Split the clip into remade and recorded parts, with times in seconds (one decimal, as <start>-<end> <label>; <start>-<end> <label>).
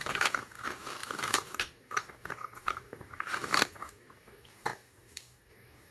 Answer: 0.0-5.9 remade